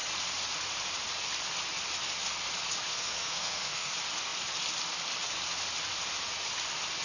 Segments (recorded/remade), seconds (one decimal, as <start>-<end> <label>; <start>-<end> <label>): 0.0-2.9 recorded; 2.9-3.9 remade; 3.9-7.0 recorded